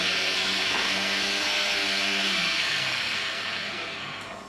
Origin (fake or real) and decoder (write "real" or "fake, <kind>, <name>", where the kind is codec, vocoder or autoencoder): fake, codec, SNAC